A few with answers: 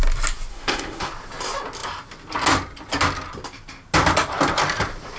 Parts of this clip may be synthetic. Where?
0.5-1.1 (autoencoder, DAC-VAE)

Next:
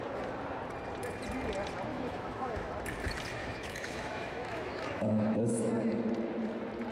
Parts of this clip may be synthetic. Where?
1.9-2.7 (autoencoder, DAC-VAE); 3.4-5.7